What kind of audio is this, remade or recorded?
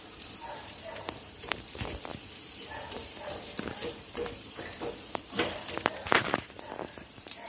remade